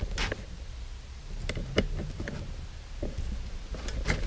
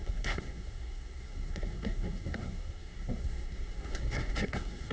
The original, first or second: first